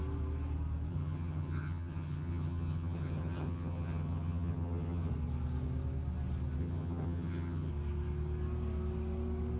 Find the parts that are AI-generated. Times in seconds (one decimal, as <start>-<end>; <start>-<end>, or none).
0.9-5.1; 6.6-7.7